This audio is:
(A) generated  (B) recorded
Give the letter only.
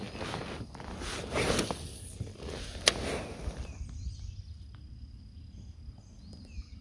B